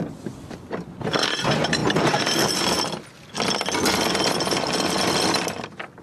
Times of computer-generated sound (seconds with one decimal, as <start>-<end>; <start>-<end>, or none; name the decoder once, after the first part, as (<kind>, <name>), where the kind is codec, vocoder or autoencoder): none

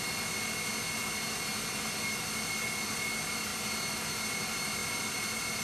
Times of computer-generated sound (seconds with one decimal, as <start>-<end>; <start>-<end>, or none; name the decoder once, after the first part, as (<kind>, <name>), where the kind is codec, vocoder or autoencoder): none

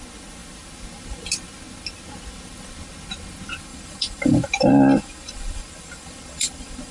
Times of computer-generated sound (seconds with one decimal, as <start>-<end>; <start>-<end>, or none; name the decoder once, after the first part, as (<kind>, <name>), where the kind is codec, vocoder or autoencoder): 3.7-6.9 (vocoder, BigVGAN v2)

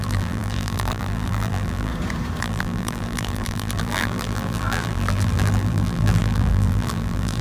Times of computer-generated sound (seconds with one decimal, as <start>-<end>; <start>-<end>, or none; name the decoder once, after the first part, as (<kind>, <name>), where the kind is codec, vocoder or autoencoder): 0.0-1.9 (vocoder, BigVGAN v2); 2.4-7.4